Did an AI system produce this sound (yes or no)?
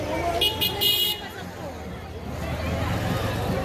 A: no